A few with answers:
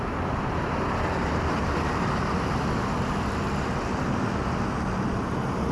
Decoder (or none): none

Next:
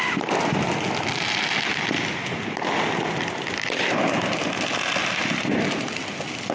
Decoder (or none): none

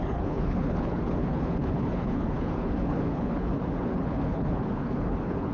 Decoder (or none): codec, HILCodec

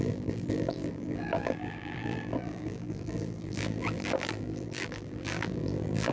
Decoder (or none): vocoder, BigVGAN v2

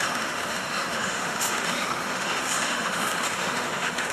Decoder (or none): autoencoder, DAC-VAE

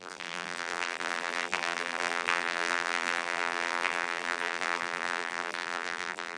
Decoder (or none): vocoder, BigVGAN v2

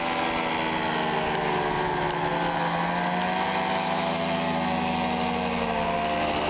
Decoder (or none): none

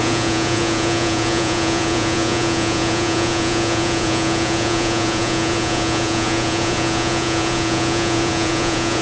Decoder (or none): vocoder, Vocos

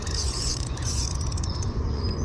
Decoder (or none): vocoder, Vocos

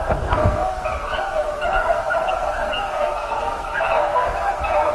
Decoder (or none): codec, SNAC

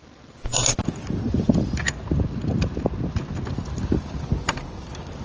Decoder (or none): none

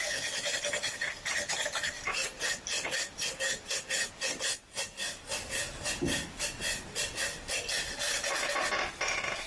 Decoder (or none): none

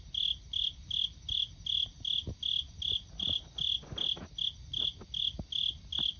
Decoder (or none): none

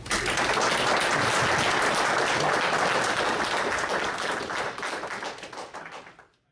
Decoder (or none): none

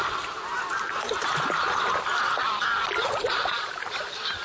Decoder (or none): vocoder, BigVGAN v2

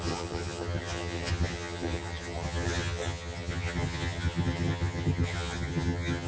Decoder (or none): vocoder, HiFi-GAN